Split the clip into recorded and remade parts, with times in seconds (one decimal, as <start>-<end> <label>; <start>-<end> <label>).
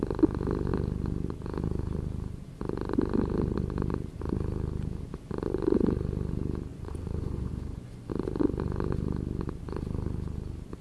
0.0-6.7 recorded; 6.7-8.1 remade; 8.1-10.8 recorded